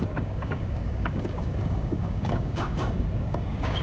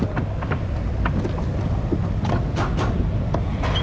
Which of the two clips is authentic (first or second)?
second